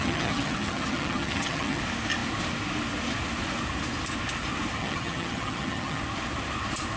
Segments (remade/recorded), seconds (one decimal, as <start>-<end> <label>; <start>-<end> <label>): 0.0-1.8 remade; 1.8-4.8 recorded; 4.8-6.0 remade; 6.0-7.0 recorded